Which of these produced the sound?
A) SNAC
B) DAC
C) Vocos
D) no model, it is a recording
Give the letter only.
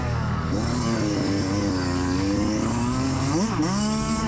B